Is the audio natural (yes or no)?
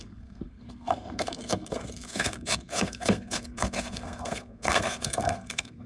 no